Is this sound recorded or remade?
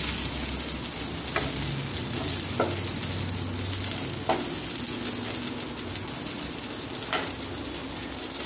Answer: recorded